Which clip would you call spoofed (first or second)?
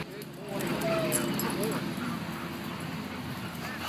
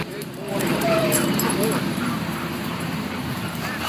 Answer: second